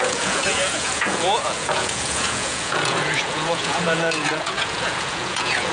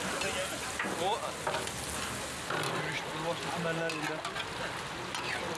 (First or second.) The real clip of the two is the second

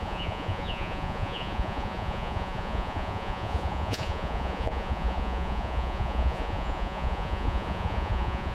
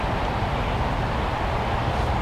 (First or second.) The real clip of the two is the second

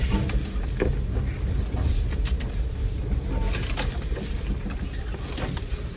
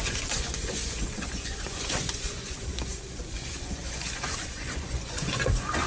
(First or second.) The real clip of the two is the first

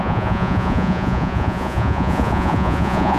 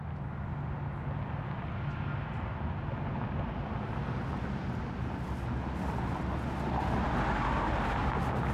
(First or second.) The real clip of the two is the second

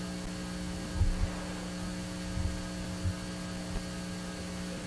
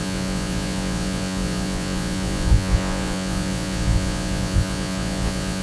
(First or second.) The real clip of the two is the first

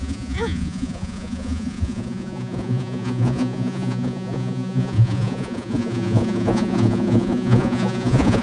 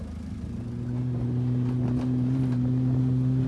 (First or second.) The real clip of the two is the second